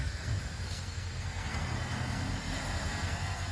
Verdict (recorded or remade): remade